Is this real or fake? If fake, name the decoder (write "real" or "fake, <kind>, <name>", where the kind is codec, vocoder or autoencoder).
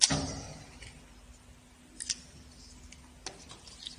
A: real